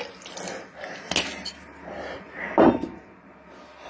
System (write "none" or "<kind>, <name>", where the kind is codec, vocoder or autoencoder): none